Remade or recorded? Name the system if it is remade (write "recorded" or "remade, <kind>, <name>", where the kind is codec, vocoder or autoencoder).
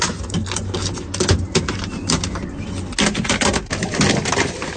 recorded